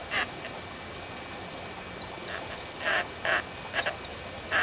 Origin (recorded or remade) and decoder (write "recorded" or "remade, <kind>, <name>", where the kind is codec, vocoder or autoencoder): recorded